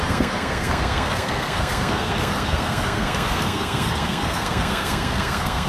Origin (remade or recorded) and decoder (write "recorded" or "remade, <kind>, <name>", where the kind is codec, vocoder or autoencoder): remade, codec, SNAC